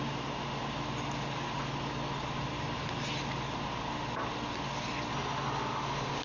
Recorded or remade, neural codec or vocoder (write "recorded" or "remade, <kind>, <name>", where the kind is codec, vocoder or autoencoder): recorded